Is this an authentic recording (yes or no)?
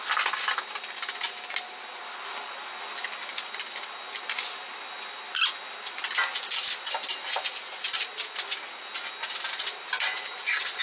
yes